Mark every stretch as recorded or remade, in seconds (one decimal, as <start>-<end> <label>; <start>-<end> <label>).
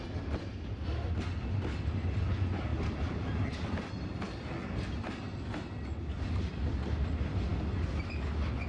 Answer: 0.0-8.7 recorded